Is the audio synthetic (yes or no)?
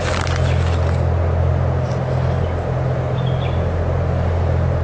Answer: no